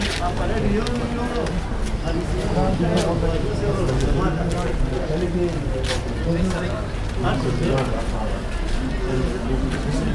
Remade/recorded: recorded